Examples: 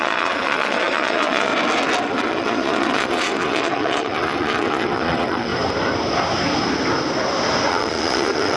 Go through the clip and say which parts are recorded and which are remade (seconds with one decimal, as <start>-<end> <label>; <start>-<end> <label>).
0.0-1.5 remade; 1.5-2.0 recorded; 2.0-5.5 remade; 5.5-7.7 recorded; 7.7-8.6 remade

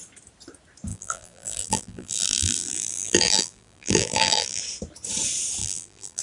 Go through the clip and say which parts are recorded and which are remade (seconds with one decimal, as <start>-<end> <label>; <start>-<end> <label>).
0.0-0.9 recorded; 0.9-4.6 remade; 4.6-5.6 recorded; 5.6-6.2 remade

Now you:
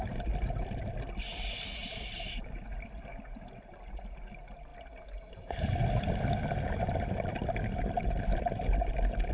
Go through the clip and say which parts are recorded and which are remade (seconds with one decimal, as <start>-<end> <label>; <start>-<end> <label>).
0.0-1.8 recorded; 1.8-2.7 remade; 2.7-9.3 recorded